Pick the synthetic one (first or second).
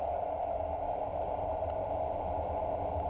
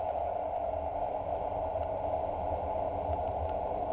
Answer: first